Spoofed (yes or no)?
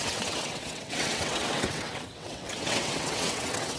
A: yes